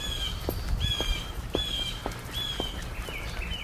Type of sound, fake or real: real